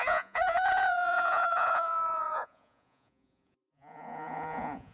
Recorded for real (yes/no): no